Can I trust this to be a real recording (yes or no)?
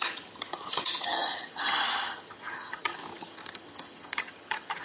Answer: no